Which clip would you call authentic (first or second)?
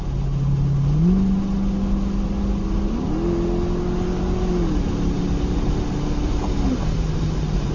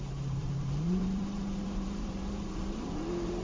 first